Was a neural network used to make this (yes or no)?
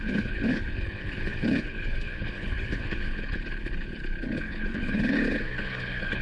yes